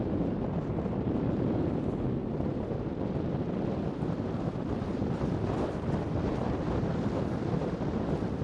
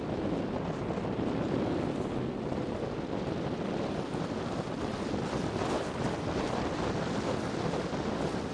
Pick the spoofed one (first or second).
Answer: first